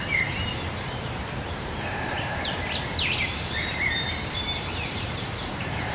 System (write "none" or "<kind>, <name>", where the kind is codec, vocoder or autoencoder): vocoder, BigVGAN v2